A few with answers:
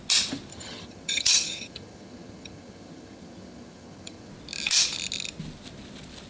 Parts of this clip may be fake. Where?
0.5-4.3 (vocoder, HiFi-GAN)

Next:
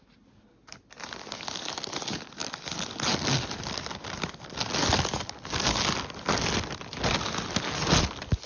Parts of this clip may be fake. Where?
none